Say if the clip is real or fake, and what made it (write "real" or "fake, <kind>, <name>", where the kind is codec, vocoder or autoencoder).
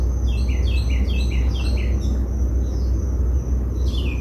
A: real